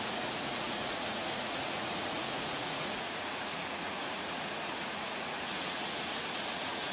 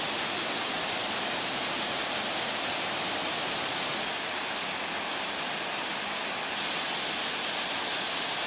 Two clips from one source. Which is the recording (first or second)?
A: second